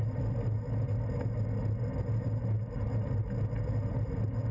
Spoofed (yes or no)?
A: no